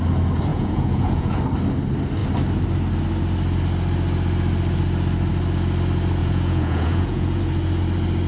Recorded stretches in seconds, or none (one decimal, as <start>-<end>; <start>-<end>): 0.0-0.5; 1.4-6.2; 7.4-8.3

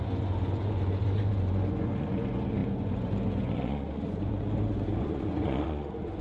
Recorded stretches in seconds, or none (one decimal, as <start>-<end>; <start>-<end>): none

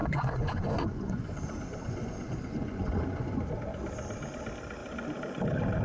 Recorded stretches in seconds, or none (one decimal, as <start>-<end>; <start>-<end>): 3.5-5.8

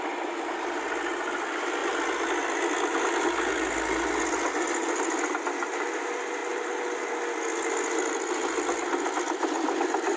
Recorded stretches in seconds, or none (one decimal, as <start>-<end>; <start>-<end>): 0.0-10.2